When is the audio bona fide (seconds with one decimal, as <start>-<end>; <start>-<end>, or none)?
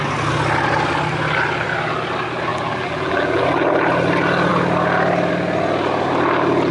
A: 0.0-2.5; 3.4-6.7